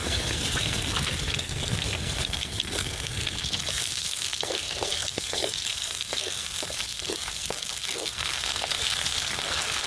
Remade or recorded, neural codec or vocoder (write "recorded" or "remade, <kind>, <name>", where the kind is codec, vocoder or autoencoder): remade, codec, SNAC